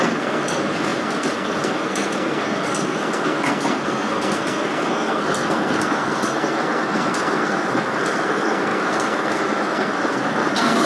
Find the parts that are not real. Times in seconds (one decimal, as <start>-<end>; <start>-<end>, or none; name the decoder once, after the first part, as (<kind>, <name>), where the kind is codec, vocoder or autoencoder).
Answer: 0.0-10.9 (codec, SNAC)